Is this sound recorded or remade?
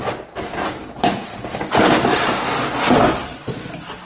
recorded